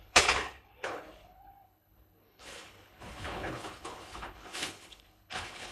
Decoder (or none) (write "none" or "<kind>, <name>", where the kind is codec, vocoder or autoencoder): codec, HILCodec